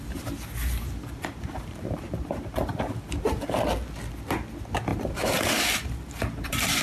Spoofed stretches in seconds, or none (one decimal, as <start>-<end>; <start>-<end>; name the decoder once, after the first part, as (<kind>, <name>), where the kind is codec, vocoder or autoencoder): 0.6-3.6 (vocoder, BigVGAN v2); 4.9-6.8